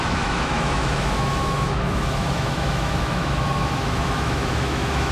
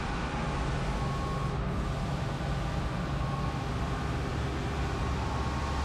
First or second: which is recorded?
second